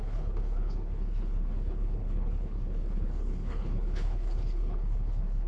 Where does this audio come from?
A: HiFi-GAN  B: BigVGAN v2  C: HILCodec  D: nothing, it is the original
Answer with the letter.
C